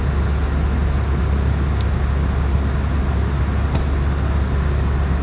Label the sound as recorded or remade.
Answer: recorded